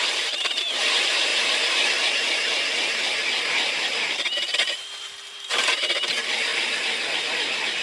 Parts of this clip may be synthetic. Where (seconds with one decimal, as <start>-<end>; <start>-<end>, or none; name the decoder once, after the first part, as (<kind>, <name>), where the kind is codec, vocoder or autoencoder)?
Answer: 0.0-4.5 (vocoder, BigVGAN v2); 5.3-6.5; 7.2-7.8